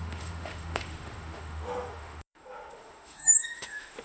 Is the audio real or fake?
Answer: fake